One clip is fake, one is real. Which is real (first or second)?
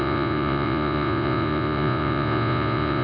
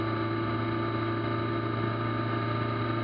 second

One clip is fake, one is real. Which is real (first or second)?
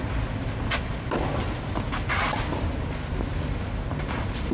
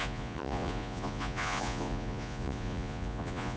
first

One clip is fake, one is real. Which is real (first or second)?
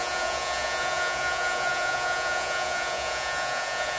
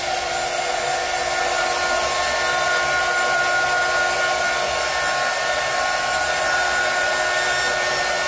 second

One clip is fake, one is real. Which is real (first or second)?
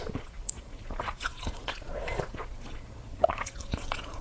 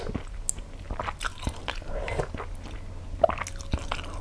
second